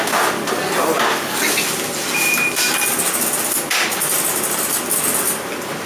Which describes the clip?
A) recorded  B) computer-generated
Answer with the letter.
A